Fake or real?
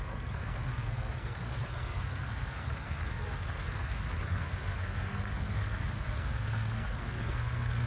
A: fake